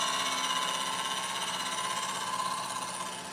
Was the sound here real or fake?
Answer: real